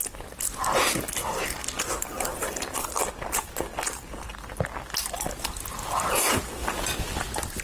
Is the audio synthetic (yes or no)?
no